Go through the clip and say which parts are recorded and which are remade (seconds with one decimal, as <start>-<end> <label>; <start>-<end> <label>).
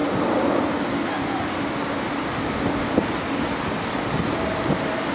0.0-5.1 recorded